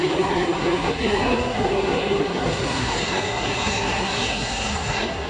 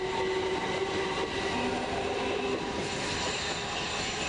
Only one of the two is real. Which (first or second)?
second